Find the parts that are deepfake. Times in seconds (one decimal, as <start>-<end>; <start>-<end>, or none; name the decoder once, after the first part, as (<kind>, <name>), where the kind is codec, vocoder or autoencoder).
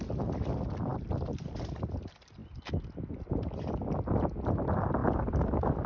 none